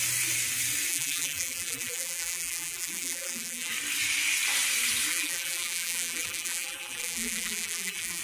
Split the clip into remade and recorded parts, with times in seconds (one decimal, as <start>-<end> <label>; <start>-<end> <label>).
0.0-0.9 recorded; 0.9-3.7 remade; 3.7-5.1 recorded; 5.1-8.2 remade